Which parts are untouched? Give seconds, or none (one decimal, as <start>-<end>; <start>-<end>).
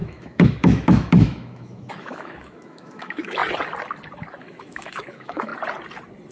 3.4-4.4; 5.5-6.3